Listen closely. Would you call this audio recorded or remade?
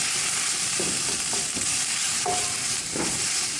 remade